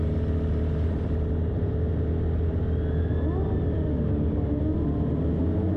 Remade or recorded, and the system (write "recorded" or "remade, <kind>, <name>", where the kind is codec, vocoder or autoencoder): recorded